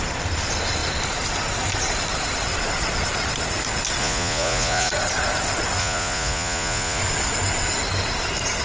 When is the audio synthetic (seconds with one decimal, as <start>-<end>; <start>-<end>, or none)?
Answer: 4.0-4.9; 5.8-7.0